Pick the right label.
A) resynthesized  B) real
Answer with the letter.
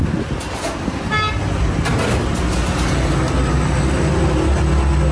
B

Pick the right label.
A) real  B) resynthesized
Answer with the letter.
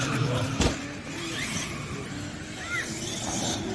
A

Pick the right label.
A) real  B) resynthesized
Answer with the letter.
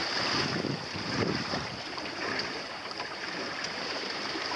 B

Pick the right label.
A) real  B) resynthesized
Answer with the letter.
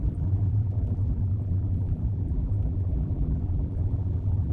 B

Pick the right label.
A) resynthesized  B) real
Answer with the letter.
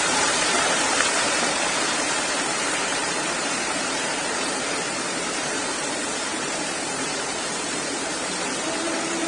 A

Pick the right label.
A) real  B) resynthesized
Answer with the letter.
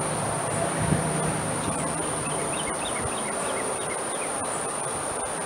B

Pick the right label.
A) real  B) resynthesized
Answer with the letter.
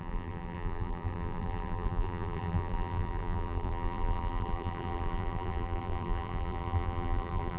B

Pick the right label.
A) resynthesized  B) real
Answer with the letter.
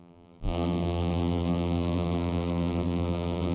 A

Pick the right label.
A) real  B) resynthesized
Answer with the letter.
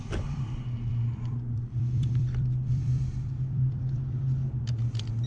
B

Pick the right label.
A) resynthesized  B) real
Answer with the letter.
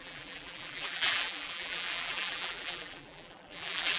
A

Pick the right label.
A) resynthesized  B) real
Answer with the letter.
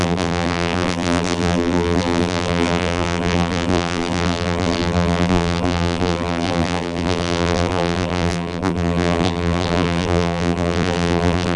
A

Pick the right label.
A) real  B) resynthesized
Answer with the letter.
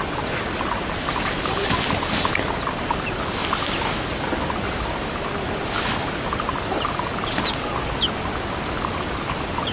A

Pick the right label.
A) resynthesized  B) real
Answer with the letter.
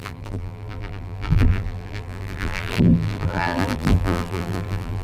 A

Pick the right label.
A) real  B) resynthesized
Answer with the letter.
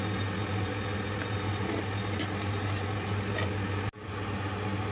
A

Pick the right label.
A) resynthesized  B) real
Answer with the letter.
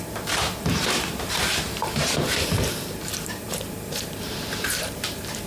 A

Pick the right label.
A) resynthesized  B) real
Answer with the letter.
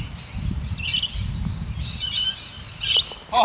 B